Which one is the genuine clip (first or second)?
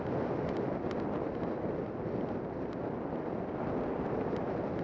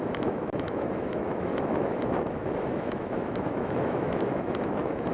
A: first